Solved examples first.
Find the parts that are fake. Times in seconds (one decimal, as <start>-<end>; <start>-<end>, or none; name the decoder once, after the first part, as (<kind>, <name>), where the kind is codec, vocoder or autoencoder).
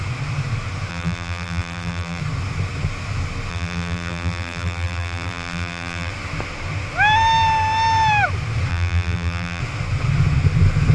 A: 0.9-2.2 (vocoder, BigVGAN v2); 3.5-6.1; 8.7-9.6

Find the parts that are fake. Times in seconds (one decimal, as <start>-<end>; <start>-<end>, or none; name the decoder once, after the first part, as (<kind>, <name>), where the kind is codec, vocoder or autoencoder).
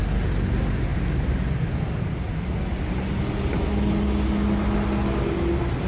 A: none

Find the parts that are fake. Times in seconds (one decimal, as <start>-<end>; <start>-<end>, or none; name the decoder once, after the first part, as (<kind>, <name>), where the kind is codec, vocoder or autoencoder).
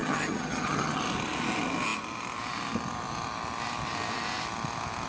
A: 0.0-1.0 (vocoder, HiFi-GAN)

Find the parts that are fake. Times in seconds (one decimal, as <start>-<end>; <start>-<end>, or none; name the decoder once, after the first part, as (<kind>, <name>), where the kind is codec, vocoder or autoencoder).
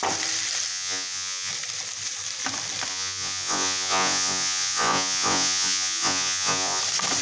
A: 0.7-1.5 (vocoder, Vocos); 2.9-6.8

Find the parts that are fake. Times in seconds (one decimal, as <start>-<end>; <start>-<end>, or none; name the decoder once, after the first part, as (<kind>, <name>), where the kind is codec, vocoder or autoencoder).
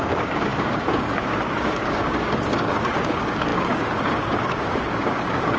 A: 0.0-5.6 (codec, DAC)